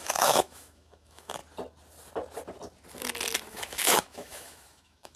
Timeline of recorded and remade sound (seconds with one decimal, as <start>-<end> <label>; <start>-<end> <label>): 0.0-1.4 remade; 1.4-3.5 recorded; 3.5-5.2 remade